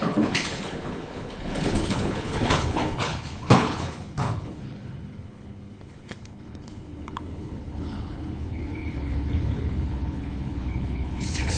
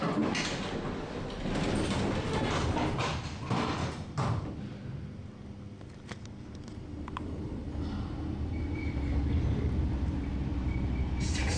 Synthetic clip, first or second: first